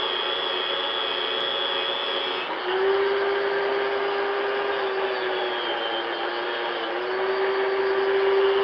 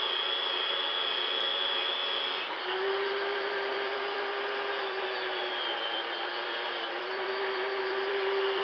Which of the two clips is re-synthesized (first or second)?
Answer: second